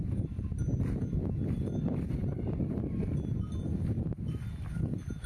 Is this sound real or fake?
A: real